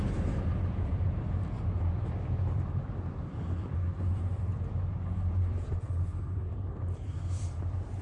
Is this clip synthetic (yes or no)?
yes